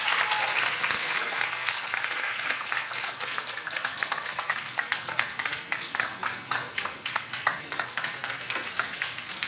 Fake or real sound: fake